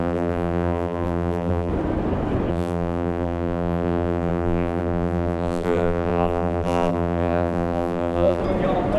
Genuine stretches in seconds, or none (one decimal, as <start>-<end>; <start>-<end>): 1.7-2.5; 8.4-9.0